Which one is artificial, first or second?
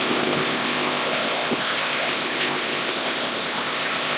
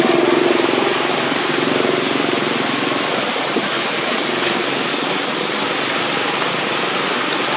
first